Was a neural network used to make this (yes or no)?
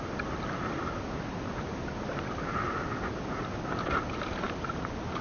no